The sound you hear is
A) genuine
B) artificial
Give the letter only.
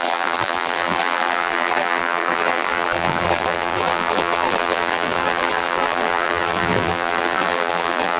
B